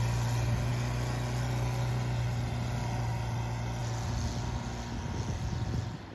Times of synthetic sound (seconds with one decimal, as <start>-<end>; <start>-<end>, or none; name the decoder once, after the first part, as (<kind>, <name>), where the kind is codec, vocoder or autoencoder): none